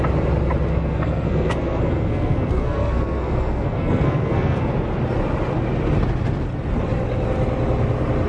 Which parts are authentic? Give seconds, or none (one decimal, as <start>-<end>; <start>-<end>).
0.0-0.7; 4.7-8.3